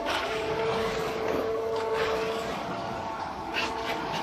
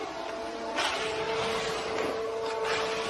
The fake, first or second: first